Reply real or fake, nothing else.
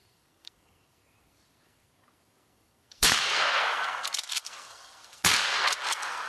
fake